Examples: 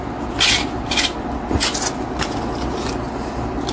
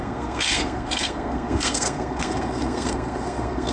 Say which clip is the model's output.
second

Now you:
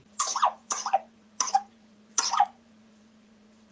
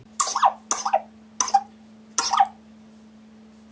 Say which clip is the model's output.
first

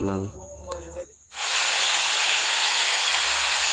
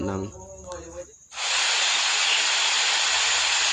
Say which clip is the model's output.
first